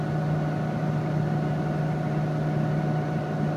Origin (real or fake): real